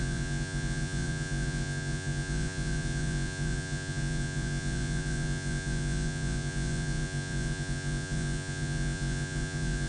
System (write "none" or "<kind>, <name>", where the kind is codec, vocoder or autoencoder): vocoder, Vocos